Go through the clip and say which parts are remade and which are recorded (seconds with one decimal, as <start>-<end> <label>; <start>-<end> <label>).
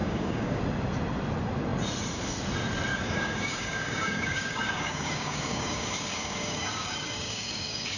0.0-0.6 remade; 0.6-2.9 recorded; 2.9-8.0 remade